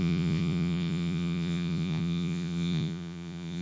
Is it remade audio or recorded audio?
remade